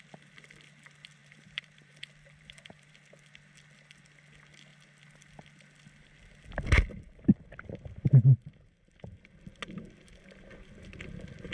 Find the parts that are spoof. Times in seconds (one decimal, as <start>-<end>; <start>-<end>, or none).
1.2-2.9